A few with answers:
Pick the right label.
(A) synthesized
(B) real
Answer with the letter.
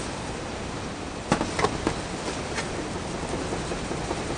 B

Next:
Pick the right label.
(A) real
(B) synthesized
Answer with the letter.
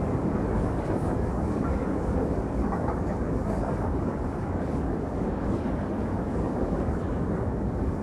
B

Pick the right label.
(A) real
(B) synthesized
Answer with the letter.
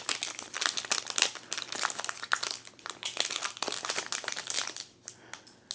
A